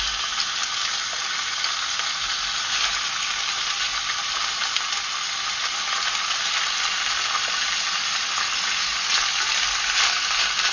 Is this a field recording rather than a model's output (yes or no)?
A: yes